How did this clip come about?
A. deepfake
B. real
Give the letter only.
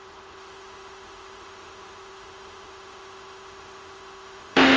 A